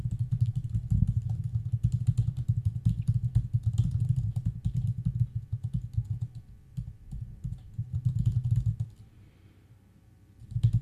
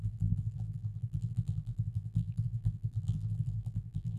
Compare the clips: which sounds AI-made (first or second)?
second